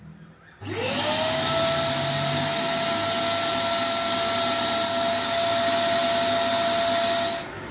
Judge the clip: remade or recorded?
recorded